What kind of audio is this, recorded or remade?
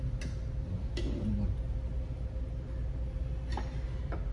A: recorded